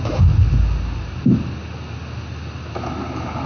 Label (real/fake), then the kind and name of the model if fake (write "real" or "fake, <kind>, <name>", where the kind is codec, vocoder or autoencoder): real